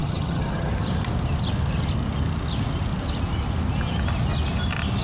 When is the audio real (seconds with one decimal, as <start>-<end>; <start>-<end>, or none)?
0.7-5.0